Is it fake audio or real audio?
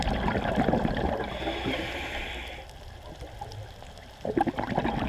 real